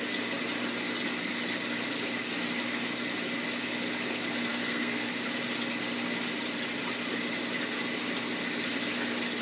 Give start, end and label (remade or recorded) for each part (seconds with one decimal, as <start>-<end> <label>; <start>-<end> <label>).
0.0-4.5 recorded; 4.5-5.1 remade; 5.1-9.4 recorded